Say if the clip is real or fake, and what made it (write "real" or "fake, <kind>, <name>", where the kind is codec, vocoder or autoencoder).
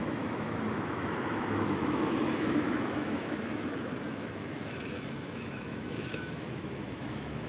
fake, autoencoder, DAC-VAE